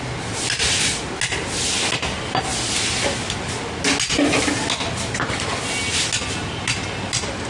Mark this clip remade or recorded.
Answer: recorded